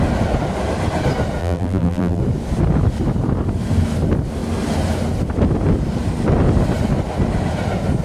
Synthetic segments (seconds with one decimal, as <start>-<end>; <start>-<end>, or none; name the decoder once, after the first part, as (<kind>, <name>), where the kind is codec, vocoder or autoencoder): 1.4-2.2 (vocoder, BigVGAN v2)